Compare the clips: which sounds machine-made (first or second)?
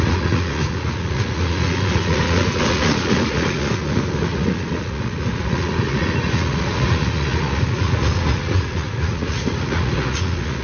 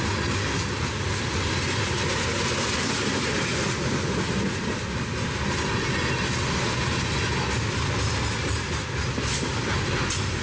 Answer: first